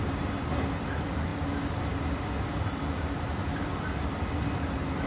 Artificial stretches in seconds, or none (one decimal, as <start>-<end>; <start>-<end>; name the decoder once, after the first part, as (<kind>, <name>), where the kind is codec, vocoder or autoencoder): none